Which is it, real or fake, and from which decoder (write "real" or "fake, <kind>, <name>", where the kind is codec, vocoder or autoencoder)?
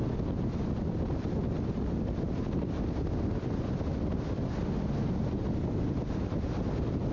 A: real